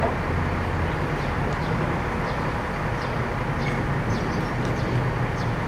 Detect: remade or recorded recorded